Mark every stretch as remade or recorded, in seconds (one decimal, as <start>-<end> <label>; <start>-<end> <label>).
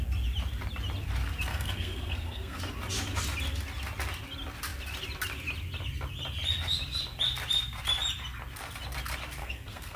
0.0-1.5 recorded; 1.5-2.6 remade; 2.6-9.4 recorded; 9.4-10.0 remade